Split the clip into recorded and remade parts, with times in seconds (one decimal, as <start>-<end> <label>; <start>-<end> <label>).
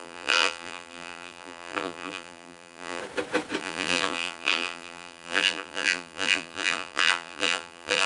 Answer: 0.0-3.0 remade; 3.0-3.6 recorded; 3.6-8.1 remade